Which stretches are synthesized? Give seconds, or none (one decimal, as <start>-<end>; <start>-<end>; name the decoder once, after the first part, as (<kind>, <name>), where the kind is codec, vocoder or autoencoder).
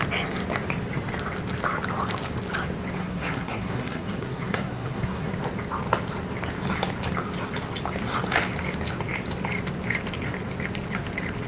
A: 3.0-5.3 (codec, SNAC)